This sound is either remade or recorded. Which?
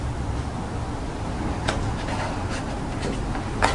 recorded